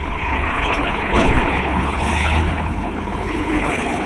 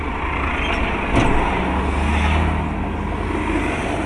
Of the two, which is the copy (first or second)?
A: first